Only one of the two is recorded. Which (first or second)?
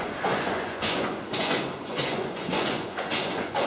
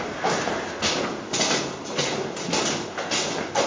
second